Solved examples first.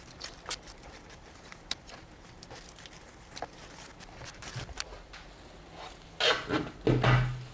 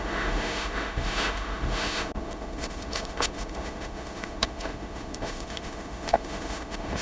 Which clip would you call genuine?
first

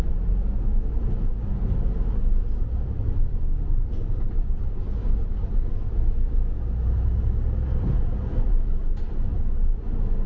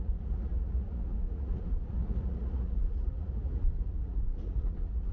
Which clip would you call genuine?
first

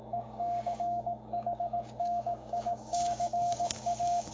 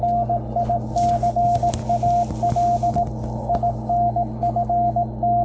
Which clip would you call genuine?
second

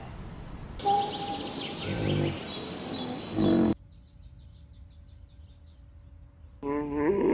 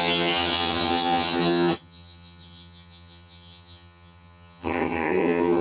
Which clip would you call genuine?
first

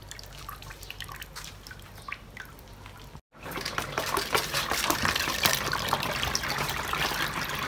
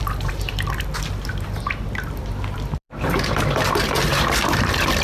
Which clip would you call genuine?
first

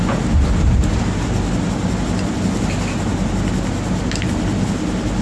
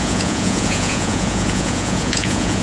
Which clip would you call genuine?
first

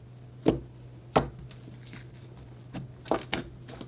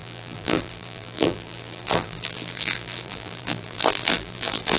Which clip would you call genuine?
first